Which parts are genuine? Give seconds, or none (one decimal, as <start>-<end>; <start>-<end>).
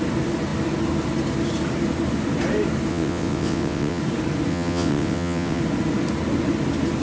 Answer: 0.0-2.9; 4.0-4.5; 5.6-7.0